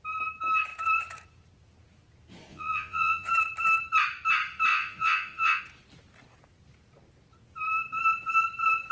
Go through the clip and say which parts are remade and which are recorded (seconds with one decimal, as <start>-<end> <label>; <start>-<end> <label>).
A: 0.0-2.5 recorded; 2.5-3.3 remade; 3.3-4.7 recorded; 4.7-5.6 remade; 5.6-8.9 recorded